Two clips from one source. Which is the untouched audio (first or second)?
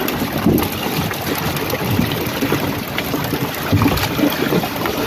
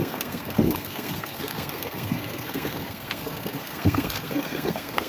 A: first